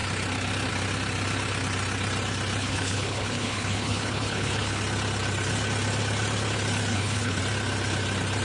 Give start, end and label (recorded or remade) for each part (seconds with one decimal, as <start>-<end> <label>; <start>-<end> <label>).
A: 0.0-2.6 recorded; 2.6-4.8 remade; 4.8-6.9 recorded; 6.9-7.4 remade; 7.4-8.4 recorded